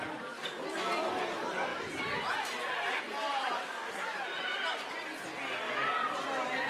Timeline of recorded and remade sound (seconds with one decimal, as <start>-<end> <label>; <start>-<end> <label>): 0.0-1.7 recorded; 1.7-3.0 remade; 3.0-3.8 recorded; 3.8-4.4 remade; 4.4-6.7 recorded